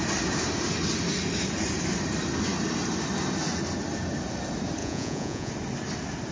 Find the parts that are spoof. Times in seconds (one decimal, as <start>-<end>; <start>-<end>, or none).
4.8-5.5